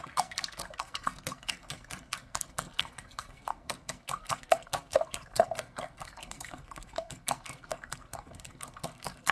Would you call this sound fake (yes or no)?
yes